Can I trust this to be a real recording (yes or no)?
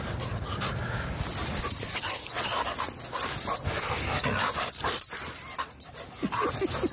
yes